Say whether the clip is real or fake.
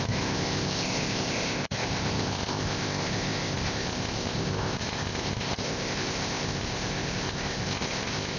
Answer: fake